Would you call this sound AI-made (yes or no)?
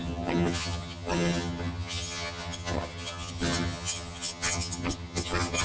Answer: yes